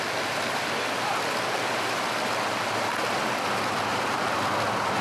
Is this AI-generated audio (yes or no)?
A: no